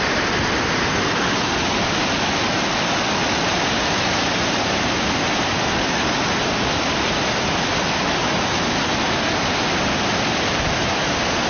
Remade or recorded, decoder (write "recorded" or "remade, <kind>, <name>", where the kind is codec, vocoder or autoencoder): recorded